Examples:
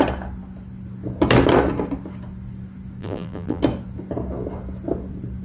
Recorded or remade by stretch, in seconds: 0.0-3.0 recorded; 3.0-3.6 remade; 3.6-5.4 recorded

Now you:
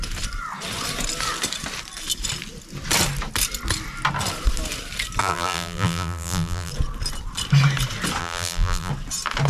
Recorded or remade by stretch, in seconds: 0.0-5.2 recorded; 5.2-6.7 remade; 6.7-8.2 recorded; 8.2-8.9 remade; 8.9-9.5 recorded

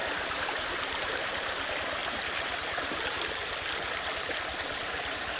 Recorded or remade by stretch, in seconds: 0.0-2.0 remade; 2.0-4.6 recorded; 4.6-5.4 remade

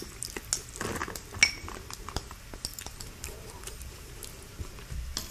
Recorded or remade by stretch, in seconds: 0.0-2.7 recorded; 2.7-4.1 remade; 4.1-5.3 recorded